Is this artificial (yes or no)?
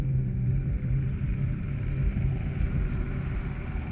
yes